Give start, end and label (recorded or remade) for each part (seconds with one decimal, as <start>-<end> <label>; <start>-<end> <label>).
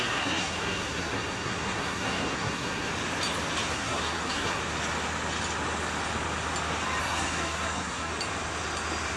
0.0-2.9 remade; 2.9-3.7 recorded; 3.7-4.6 remade; 4.6-7.0 recorded; 7.0-8.1 remade; 8.1-9.2 recorded